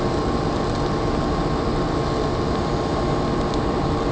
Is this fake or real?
real